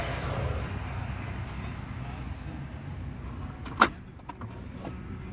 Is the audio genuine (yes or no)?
yes